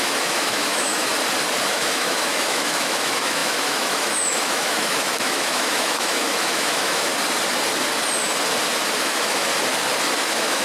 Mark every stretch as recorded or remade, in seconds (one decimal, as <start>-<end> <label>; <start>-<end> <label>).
0.0-1.1 remade; 1.1-1.7 recorded; 1.7-7.1 remade; 7.1-9.0 recorded; 9.0-9.5 remade; 9.5-10.2 recorded; 10.2-10.6 remade